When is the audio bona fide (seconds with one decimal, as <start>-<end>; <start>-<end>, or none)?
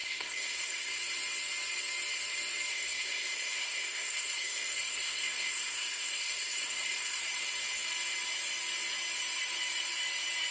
0.9-2.7; 7.2-10.5